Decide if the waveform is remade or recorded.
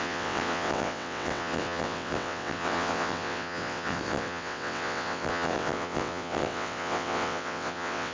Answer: remade